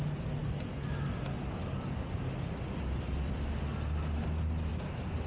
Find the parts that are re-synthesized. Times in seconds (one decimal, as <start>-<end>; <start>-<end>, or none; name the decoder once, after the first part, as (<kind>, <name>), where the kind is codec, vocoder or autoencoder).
none